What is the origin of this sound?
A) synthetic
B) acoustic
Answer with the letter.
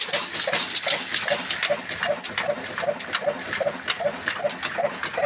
B